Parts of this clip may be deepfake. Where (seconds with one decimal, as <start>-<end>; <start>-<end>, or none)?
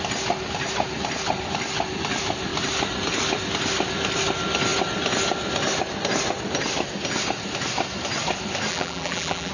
8.7-9.5